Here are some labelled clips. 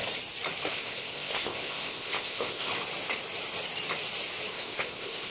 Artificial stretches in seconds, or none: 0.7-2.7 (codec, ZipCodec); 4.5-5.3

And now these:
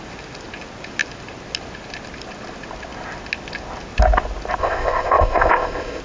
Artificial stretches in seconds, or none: 4.6-6.0 (codec, ZipCodec)